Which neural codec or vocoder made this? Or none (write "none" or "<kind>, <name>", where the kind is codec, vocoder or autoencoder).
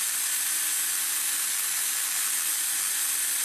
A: none